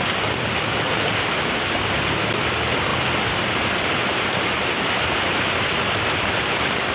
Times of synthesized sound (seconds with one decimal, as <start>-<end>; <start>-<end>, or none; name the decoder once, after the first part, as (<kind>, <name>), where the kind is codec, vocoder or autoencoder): none